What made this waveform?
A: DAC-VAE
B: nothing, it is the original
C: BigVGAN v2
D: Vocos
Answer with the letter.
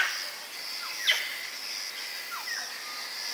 B